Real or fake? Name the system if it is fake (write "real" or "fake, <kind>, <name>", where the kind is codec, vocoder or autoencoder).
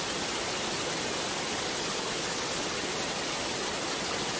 real